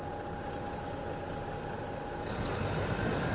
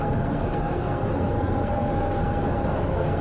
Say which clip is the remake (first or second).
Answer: second